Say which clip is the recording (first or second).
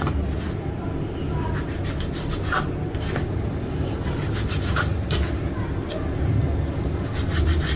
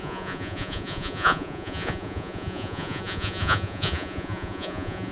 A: first